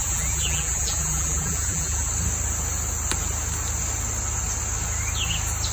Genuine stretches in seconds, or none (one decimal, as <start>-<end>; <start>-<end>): 2.1-5.7